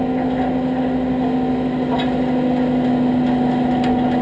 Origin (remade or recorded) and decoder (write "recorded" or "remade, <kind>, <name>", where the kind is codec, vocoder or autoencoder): recorded